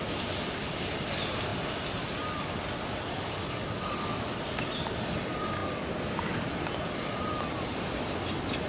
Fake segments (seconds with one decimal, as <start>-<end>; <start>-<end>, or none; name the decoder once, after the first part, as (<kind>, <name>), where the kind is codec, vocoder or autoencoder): none